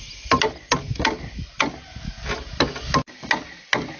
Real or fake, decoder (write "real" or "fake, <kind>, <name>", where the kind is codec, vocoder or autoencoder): real